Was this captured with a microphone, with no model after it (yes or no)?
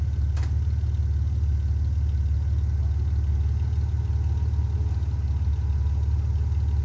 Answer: yes